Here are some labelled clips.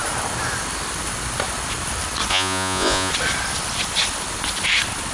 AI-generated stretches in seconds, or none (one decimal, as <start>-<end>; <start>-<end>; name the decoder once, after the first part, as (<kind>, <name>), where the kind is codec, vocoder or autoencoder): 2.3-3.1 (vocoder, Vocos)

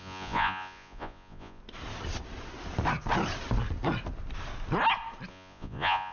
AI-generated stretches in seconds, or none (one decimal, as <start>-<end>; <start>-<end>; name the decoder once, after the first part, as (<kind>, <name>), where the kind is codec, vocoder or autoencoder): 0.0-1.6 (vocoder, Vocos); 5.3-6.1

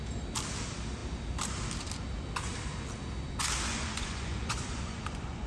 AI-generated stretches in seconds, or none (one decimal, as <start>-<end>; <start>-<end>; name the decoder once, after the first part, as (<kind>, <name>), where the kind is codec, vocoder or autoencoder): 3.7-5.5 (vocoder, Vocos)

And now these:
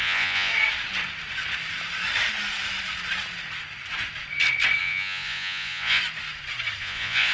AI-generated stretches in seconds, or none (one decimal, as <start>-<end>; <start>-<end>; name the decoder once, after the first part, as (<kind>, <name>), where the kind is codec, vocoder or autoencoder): 0.0-0.5 (vocoder, Vocos); 4.8-6.0; 6.8-7.3